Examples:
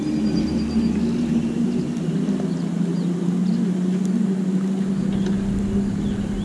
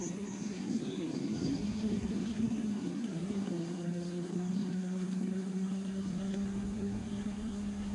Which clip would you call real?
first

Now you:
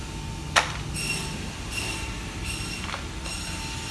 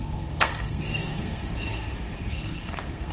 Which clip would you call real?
first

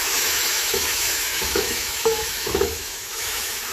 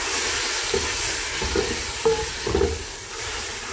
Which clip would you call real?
second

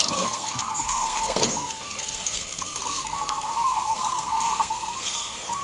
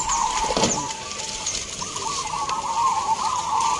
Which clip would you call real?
second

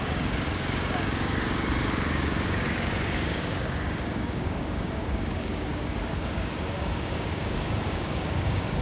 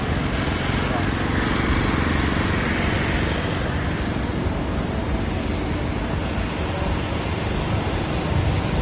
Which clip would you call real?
second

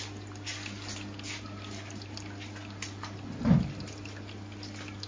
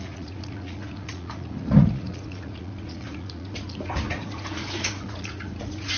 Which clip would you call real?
first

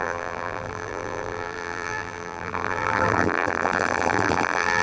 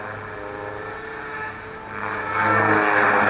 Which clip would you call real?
second